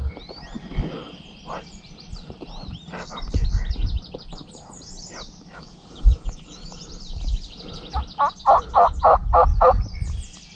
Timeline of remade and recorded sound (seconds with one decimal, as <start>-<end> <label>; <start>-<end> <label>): 0.0-5.5 recorded; 5.5-6.8 remade; 6.8-10.6 recorded